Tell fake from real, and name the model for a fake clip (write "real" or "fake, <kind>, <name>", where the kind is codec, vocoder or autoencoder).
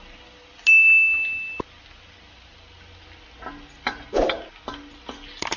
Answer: real